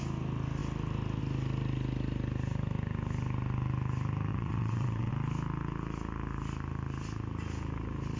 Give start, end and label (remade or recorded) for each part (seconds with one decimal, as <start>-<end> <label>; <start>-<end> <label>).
0.0-4.3 recorded; 4.3-5.1 remade; 5.1-8.2 recorded